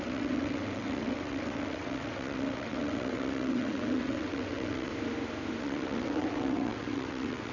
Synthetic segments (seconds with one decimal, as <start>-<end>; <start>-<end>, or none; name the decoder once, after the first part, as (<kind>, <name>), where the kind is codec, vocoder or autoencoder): 0.0-4.9 (vocoder, WaveNeXt); 5.6-7.5